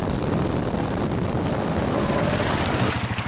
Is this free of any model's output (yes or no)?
yes